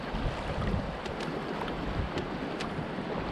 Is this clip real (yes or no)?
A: yes